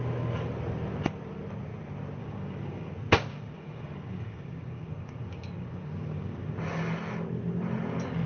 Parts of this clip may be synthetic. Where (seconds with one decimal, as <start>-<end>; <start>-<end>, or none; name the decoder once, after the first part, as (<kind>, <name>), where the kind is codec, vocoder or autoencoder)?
2.2-2.9 (codec, DAC); 3.3-6.5